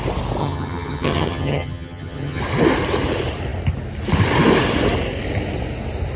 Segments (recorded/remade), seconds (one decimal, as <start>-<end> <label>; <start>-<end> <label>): 0.0-0.4 recorded; 0.4-2.4 remade; 2.4-6.2 recorded